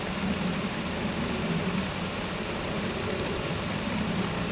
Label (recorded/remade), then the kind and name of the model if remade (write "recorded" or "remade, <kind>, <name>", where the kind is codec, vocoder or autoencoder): recorded